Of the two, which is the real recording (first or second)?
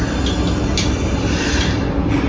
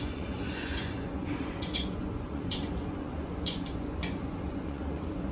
first